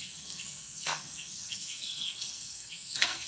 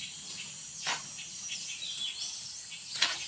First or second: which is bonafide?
second